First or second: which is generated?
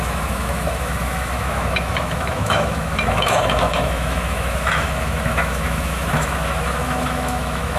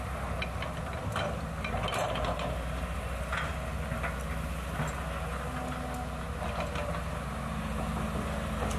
first